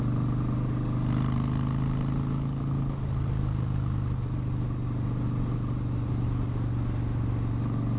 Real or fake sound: real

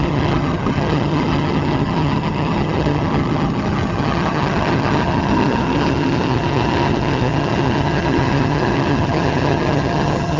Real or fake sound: fake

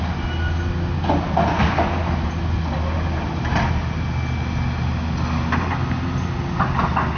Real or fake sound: real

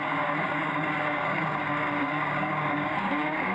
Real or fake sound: fake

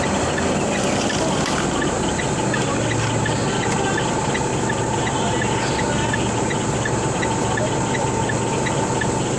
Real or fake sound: real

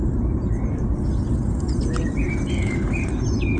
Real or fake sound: real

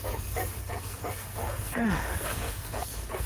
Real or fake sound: fake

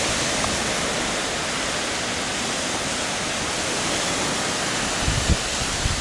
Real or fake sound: real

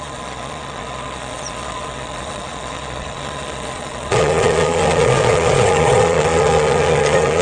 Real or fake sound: fake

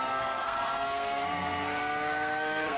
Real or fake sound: fake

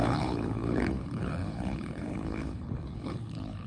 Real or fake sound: fake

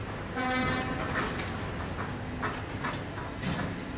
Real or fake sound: real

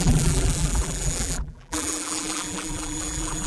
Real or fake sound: fake